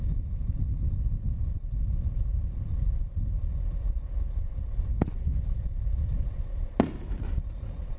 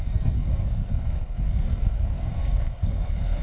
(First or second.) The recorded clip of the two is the first